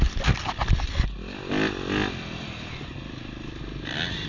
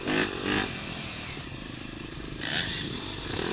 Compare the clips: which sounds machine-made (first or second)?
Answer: second